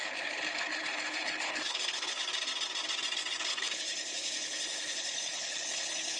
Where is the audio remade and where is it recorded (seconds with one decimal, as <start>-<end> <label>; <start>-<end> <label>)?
0.0-2.2 remade; 2.2-3.5 recorded; 3.5-6.2 remade